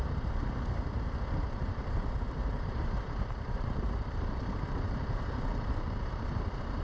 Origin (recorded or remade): remade